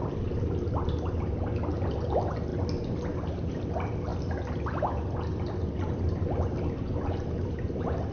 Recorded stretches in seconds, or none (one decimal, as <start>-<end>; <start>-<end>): 0.0-8.1